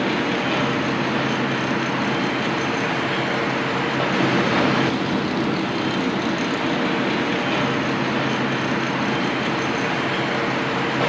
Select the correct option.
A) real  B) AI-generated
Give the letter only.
A